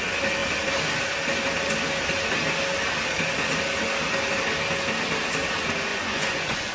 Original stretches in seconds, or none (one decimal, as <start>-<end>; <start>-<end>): 0.0-5.9